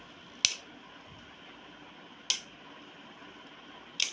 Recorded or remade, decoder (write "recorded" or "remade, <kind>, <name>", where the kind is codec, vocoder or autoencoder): recorded